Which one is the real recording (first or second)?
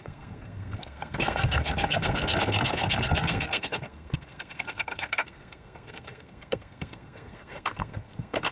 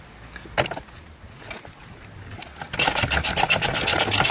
second